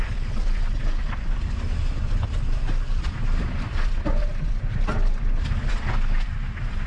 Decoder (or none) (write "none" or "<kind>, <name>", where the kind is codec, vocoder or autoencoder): vocoder, BigVGAN v2